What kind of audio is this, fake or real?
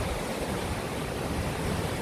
real